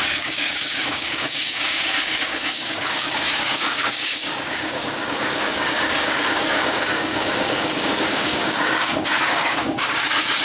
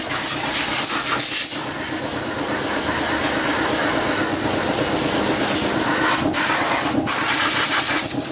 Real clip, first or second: second